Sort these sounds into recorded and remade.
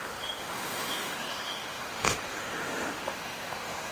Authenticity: remade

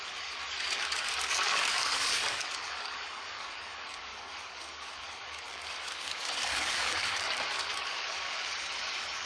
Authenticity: remade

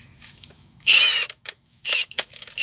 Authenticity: remade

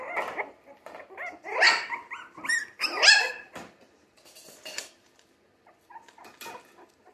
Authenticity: remade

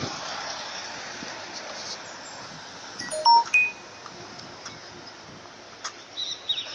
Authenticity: recorded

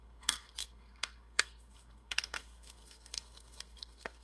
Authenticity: remade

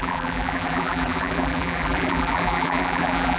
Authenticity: remade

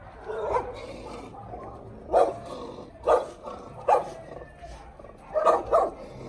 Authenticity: recorded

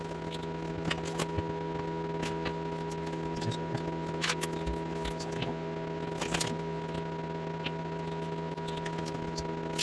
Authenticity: recorded